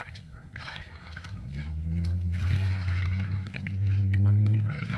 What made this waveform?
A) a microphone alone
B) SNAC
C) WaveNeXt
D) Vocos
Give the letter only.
B